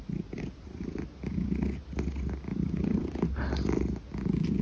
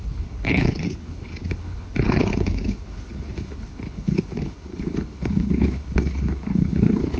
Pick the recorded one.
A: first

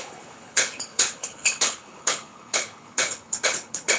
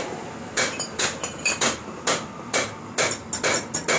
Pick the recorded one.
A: second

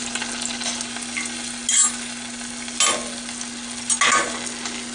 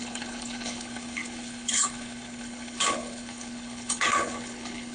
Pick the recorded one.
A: first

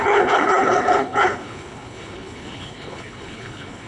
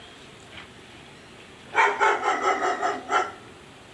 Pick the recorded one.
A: second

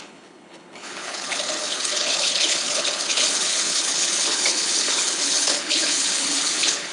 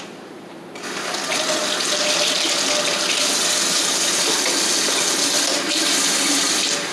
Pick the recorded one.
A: second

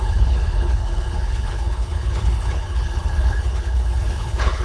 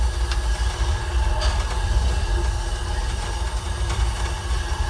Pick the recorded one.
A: second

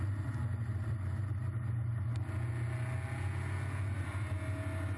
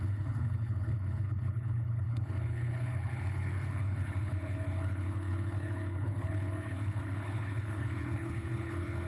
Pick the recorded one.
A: first